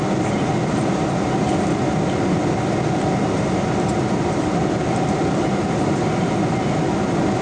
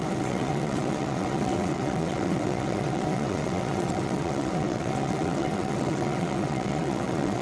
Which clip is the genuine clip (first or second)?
first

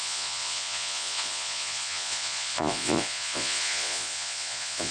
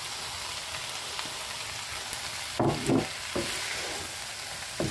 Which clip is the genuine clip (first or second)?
second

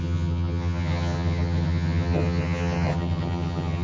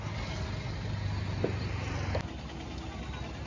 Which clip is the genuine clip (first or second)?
second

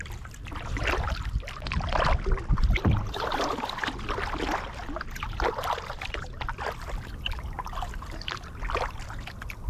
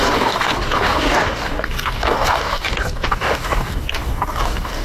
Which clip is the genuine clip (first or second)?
first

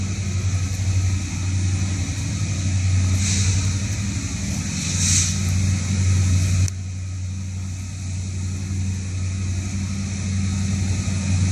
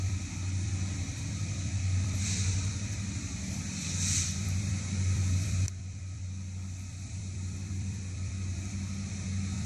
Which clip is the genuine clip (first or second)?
first